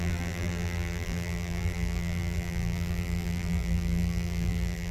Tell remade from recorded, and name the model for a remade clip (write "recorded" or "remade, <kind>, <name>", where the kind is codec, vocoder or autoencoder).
remade, vocoder, BigVGAN v2